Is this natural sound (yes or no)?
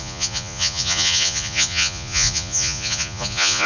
no